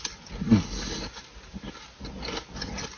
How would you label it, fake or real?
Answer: real